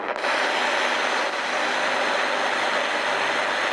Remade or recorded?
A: recorded